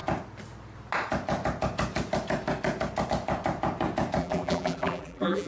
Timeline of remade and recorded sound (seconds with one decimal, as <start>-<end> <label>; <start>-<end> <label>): 0.0-4.2 recorded; 4.2-5.5 remade